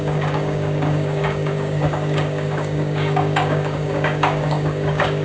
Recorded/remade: remade